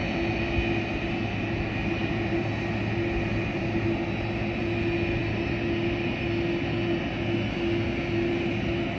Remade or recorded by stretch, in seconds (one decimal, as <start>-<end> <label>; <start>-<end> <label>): 0.0-9.0 recorded